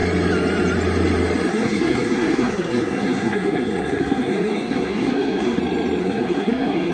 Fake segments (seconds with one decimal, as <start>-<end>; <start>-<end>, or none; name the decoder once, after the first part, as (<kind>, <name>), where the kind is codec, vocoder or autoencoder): 1.5-5.6 (codec, SNAC); 6.0-6.9